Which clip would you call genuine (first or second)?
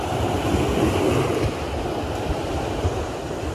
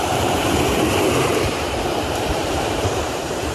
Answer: first